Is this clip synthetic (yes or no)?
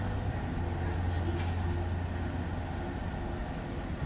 no